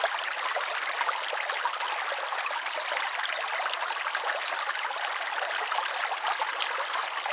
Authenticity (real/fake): real